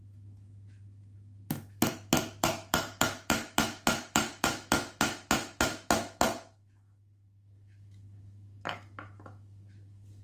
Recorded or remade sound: remade